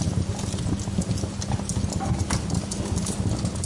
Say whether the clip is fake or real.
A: real